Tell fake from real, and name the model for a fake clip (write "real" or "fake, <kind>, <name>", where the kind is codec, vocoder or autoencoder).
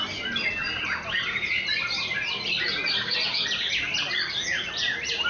real